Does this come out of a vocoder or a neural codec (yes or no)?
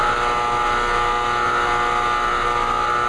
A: no